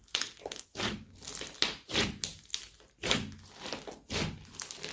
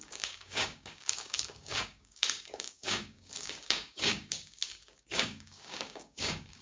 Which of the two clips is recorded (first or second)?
first